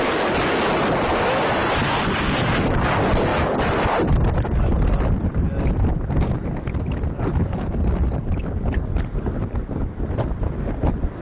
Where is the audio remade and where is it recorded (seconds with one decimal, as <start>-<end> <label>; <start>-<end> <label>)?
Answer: 0.0-11.2 recorded